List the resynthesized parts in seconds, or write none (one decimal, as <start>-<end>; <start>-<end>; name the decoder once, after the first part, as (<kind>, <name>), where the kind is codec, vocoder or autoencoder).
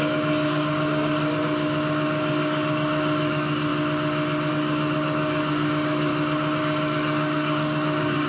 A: 0.0-3.7 (codec, DAC); 4.5-6.1; 6.6-8.3